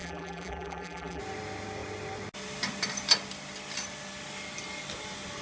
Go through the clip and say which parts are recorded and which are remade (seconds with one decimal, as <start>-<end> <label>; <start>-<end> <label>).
0.0-1.2 remade; 1.2-5.4 recorded